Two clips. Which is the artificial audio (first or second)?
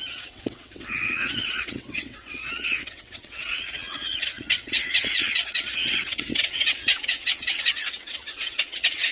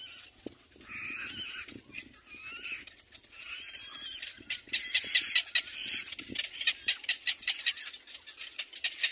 first